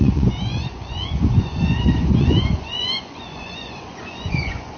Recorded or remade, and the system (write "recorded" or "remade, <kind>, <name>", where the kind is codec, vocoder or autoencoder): remade, vocoder, Vocos